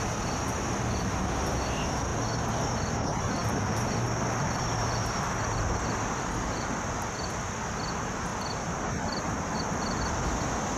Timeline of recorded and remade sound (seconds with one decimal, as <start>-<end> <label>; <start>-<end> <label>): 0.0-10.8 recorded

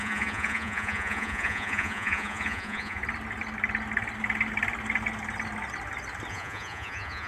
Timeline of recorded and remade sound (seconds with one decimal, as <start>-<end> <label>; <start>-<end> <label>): 0.0-3.0 remade; 3.0-6.3 recorded; 6.3-7.3 remade

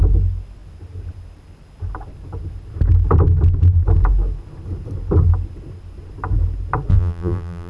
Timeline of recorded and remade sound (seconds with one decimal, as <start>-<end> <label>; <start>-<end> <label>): 0.0-6.9 recorded; 6.9-7.7 remade

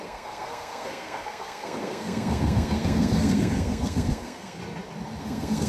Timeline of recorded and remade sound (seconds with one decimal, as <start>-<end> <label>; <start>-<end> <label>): 0.0-4.6 remade; 4.6-5.2 recorded; 5.2-5.7 remade

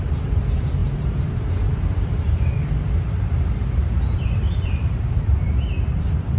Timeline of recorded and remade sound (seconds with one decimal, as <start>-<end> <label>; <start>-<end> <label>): 0.0-0.8 recorded; 0.8-2.5 remade; 2.5-3.8 recorded; 3.8-5.5 remade; 5.5-6.4 recorded